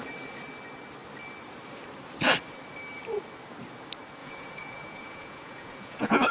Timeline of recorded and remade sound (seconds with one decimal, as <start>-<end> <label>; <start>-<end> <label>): 0.0-4.2 recorded; 4.2-6.3 remade